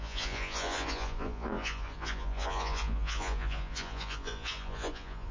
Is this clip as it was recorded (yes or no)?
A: no